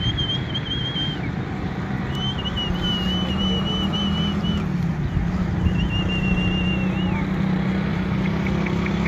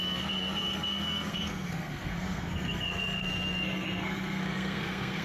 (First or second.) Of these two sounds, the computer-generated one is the second